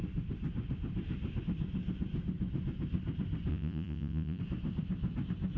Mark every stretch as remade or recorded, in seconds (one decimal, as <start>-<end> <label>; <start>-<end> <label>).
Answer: 0.0-3.5 recorded; 3.5-4.4 remade; 4.4-5.6 recorded